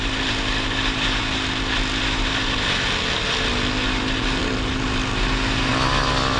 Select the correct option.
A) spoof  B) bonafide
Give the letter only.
B